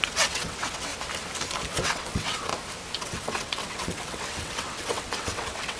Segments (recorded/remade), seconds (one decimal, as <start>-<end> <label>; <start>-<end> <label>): 0.0-0.9 remade; 0.9-1.7 recorded; 1.7-2.5 remade; 2.5-3.0 recorded; 3.0-5.8 remade